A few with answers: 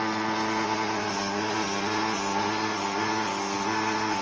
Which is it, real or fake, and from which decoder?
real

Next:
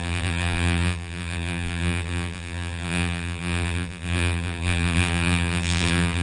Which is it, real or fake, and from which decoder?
fake, vocoder, BigVGAN v2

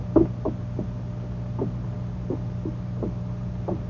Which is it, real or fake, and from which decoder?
real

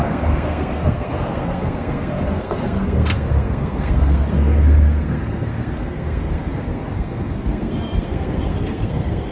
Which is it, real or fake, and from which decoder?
fake, codec, SNAC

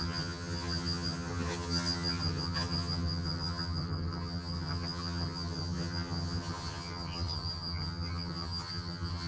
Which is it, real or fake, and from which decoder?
fake, vocoder, HiFi-GAN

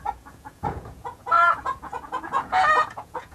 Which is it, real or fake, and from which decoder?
fake, vocoder, Vocos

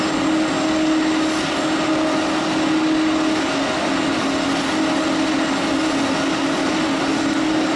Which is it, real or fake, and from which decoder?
real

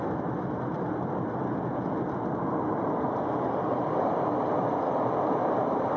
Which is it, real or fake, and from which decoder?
real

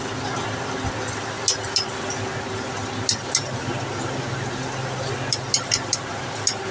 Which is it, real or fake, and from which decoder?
real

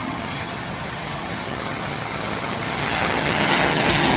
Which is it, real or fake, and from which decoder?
fake, vocoder, HiFi-GAN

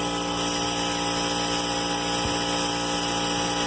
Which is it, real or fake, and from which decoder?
real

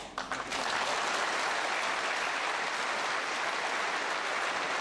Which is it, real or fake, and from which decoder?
real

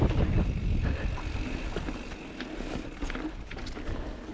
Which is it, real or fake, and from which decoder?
real